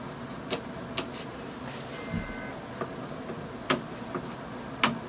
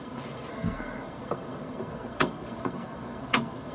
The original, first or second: first